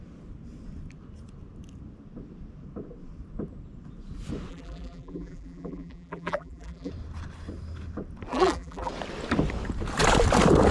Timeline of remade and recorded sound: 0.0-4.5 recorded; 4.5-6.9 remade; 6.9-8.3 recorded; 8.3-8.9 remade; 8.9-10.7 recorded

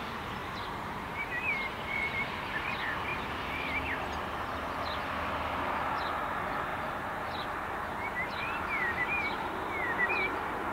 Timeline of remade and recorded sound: 0.0-0.4 recorded; 0.4-2.3 remade; 2.3-6.7 recorded; 6.7-10.1 remade; 10.1-10.7 recorded

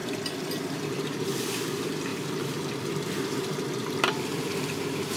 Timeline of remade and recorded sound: 0.0-2.1 remade; 2.1-4.1 recorded; 4.1-5.2 remade

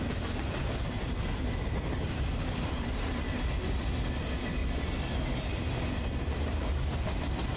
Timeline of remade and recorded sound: 0.0-4.6 remade; 4.6-6.2 recorded; 6.2-7.6 remade